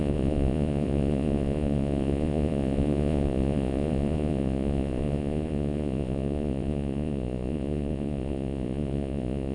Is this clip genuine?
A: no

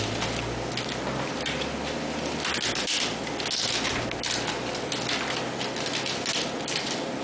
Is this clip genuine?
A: yes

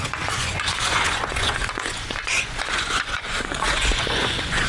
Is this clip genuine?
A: no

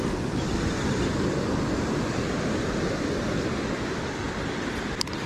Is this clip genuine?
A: yes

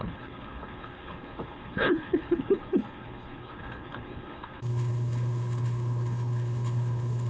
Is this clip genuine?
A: no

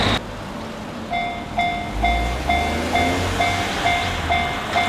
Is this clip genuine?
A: yes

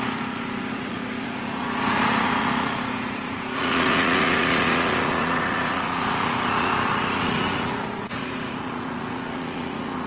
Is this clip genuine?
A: no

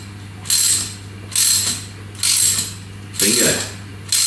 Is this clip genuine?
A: yes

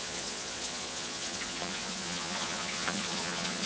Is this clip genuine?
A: no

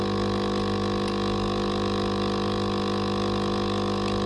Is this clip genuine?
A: yes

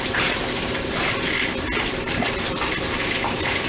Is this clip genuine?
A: yes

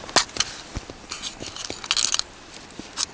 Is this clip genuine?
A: yes